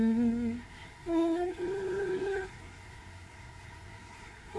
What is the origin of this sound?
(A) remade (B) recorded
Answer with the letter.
A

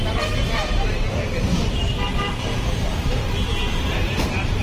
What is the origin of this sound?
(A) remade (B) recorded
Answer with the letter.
A